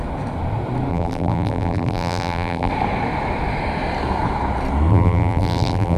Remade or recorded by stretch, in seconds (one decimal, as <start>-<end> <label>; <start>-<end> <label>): 0.0-0.9 recorded; 0.9-2.7 remade; 2.7-4.9 recorded; 4.9-6.0 remade